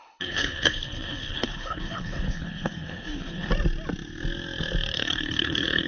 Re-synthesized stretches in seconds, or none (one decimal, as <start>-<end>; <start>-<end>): 0.0-3.5; 4.9-5.9